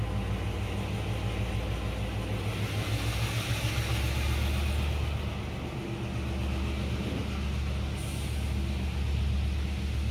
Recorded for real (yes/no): yes